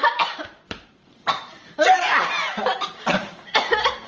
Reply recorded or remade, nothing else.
remade